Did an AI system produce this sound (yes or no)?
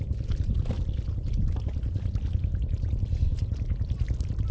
no